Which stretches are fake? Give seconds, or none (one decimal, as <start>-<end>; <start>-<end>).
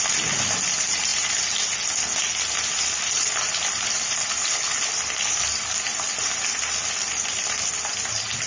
none